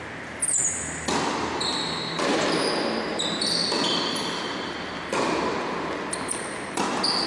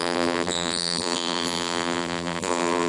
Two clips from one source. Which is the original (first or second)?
first